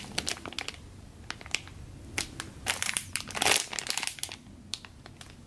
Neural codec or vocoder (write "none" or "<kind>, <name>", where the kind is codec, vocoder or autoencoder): none